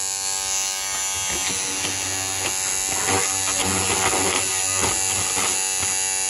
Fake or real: real